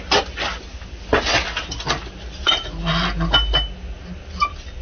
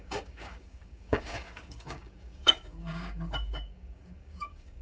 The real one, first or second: first